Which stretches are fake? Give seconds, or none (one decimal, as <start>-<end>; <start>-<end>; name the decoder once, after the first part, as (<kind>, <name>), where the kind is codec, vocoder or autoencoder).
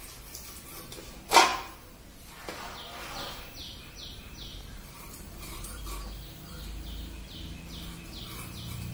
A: 3.6-4.1 (vocoder, BigVGAN v2); 4.5-5.8